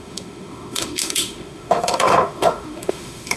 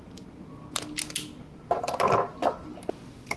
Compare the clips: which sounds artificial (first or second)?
first